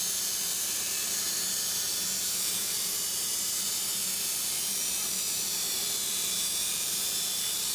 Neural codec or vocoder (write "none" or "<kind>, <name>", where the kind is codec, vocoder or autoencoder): vocoder, BigVGAN v2